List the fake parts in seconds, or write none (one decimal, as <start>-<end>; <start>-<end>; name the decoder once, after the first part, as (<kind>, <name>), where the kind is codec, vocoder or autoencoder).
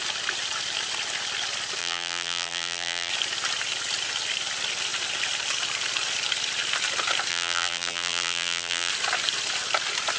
1.8-3.1 (vocoder, BigVGAN v2); 7.3-8.9